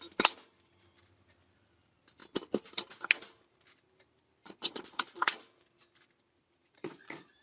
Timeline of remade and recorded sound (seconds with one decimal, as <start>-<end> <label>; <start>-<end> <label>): 0.0-4.4 recorded; 4.4-5.4 remade; 5.4-6.4 recorded; 6.4-7.4 remade

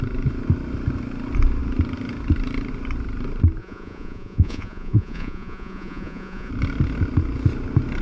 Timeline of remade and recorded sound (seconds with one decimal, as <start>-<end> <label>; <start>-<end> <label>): 0.0-3.6 recorded; 3.6-6.5 remade; 6.5-8.0 recorded

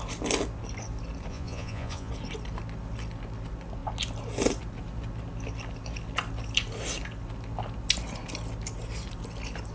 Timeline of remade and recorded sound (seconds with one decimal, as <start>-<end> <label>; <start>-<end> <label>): 0.0-1.3 recorded; 1.3-2.1 remade; 2.1-9.7 recorded

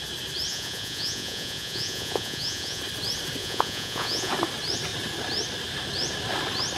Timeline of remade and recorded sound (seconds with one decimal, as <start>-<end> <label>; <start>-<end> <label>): 0.0-0.5 recorded; 0.5-2.8 remade; 2.8-3.4 recorded; 3.4-4.3 remade; 4.3-6.8 recorded

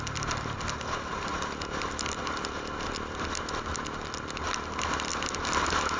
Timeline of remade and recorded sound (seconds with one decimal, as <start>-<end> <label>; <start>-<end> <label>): 0.0-6.0 recorded

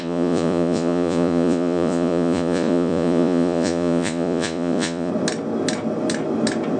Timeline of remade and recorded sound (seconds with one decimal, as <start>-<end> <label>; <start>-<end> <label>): 0.0-5.1 remade; 5.1-6.8 recorded

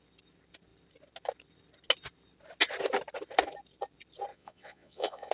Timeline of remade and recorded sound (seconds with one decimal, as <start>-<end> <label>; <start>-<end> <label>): 0.0-4.3 recorded; 4.3-5.3 remade

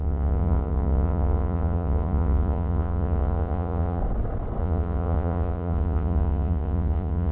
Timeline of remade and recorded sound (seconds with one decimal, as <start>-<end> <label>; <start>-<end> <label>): 0.0-4.0 remade; 4.0-4.6 recorded; 4.6-7.3 remade